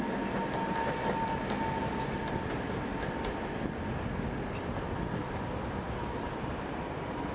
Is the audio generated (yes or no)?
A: no